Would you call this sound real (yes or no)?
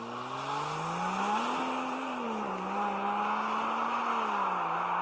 yes